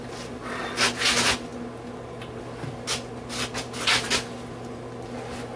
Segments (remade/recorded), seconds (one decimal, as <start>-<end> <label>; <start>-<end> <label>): 0.0-5.6 recorded